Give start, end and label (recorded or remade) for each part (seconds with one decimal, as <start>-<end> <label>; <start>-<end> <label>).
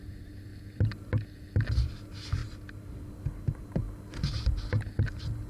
0.0-0.5 remade; 0.5-1.8 recorded; 1.8-3.8 remade; 3.8-5.0 recorded; 5.0-5.5 remade